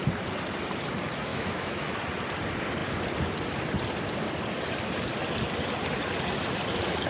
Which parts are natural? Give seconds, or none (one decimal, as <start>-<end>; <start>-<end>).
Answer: 0.0-1.3; 2.0-7.1